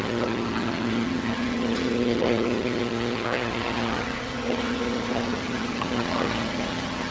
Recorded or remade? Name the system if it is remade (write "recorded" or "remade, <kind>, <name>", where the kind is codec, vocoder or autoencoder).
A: remade, vocoder, HiFi-GAN